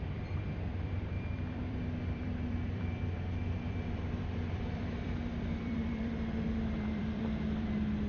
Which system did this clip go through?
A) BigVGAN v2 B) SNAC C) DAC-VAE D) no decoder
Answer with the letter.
A